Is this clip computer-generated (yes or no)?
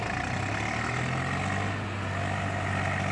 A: no